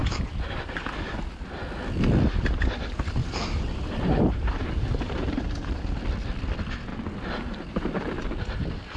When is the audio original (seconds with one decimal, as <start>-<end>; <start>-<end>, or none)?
0.8-3.2; 6.0-6.9; 7.9-9.0